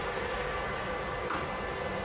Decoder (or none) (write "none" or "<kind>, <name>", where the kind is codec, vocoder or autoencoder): none